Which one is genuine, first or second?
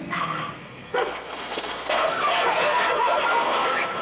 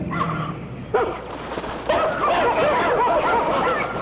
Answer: second